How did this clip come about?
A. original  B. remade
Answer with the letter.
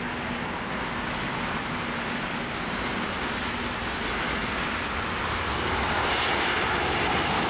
A